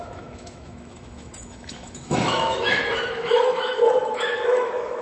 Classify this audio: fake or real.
fake